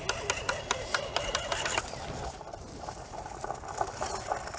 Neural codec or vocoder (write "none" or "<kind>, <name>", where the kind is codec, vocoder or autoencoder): none